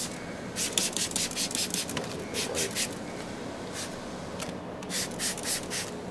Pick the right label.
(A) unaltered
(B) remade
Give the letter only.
A